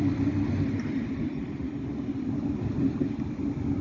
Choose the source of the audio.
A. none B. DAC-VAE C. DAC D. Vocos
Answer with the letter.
A